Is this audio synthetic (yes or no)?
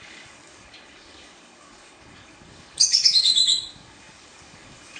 yes